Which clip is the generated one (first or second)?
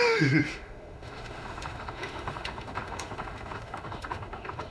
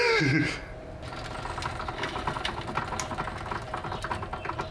first